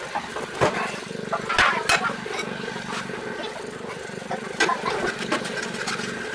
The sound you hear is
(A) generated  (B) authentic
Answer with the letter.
B